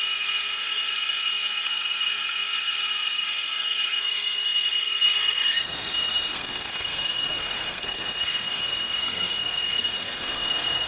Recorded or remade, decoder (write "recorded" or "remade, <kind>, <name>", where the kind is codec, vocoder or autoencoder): remade, codec, SNAC